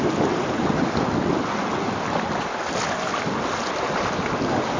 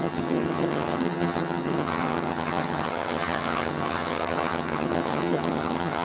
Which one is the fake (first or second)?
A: second